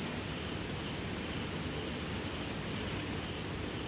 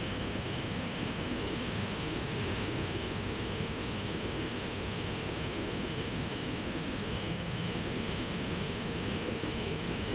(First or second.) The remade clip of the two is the second